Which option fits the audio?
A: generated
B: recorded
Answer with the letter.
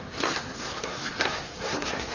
A